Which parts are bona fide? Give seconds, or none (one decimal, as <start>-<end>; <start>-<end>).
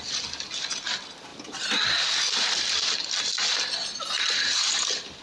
0.0-5.2